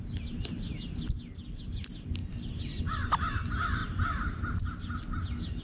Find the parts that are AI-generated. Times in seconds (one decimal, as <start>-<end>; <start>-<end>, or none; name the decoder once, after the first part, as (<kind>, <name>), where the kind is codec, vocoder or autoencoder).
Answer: none

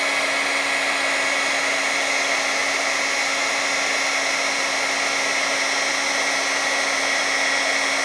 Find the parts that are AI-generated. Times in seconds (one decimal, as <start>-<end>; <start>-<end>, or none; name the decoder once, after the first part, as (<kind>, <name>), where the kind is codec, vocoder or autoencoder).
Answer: none

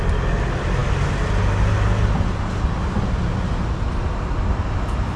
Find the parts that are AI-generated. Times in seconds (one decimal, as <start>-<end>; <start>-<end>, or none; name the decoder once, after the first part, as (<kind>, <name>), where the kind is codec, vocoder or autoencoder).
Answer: none

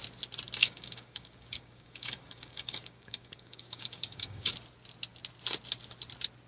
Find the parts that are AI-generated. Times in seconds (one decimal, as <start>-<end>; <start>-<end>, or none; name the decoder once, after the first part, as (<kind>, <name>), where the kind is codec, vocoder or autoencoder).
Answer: 0.6-4.5 (codec, DAC)

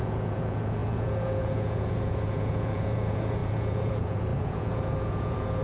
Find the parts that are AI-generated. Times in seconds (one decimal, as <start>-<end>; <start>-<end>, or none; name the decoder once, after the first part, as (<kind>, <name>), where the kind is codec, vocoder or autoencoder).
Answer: 0.0-5.6 (vocoder, Vocos)

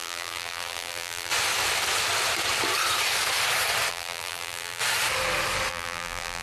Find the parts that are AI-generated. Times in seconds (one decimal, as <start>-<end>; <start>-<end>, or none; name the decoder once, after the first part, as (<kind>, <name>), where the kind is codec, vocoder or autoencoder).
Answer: 0.0-1.3 (vocoder, BigVGAN v2); 3.9-4.8; 5.7-6.4